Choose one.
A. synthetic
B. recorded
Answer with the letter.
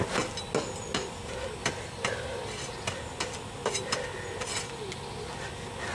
B